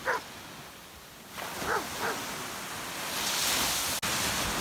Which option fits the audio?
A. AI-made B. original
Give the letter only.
B